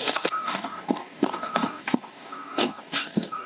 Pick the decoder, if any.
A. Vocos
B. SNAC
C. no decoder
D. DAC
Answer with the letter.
D